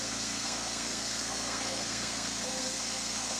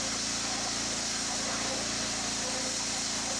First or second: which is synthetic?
first